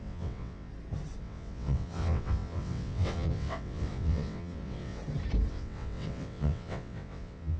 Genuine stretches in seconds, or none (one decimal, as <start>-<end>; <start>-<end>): 0.7-1.2; 5.0-5.5